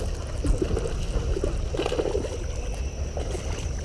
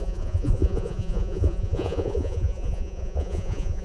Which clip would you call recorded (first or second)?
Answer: first